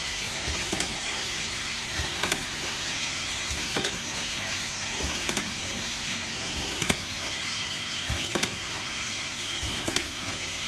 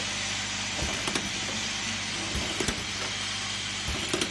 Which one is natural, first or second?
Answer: second